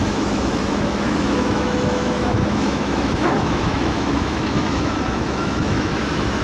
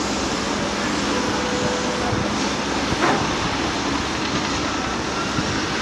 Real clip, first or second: second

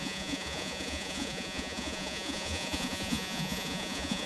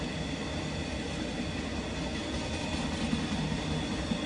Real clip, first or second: second